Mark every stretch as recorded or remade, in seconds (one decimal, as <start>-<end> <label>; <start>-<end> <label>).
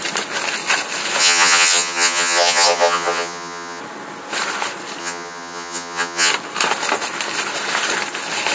0.0-1.2 recorded; 1.2-3.8 remade; 3.8-5.0 recorded; 5.0-6.3 remade; 6.3-8.5 recorded